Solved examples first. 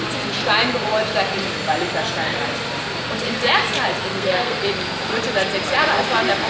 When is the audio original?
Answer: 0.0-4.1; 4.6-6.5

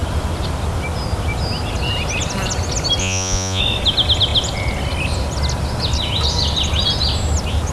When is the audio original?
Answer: 0.0-3.0; 3.6-7.7

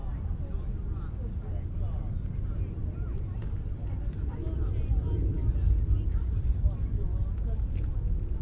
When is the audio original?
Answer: 0.0-8.4

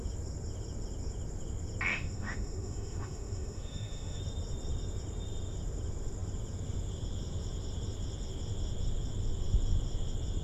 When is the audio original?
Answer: 0.0-1.9; 4.2-10.4

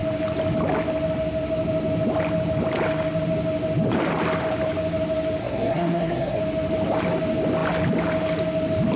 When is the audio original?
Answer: 0.0-5.4; 6.4-9.0

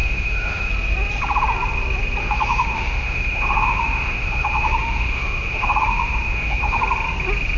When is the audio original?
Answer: 0.7-2.2; 6.8-7.6